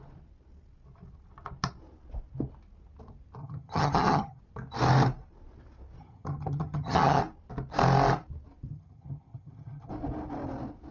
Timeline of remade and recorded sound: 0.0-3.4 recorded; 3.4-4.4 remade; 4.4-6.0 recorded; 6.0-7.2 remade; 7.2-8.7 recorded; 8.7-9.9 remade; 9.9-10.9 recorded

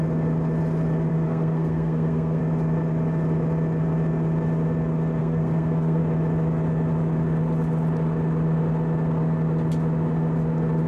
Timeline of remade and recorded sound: 0.0-1.1 recorded; 1.1-2.4 remade; 2.4-5.2 recorded; 5.2-6.0 remade; 6.0-10.9 recorded